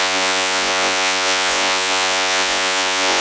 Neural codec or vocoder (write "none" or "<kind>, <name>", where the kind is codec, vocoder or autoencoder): vocoder, Vocos